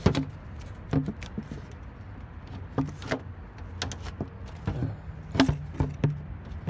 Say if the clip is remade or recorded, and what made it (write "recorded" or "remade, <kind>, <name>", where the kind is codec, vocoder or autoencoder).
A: recorded